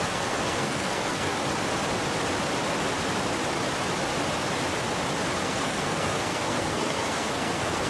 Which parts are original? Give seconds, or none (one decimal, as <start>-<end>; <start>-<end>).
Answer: 1.4-5.4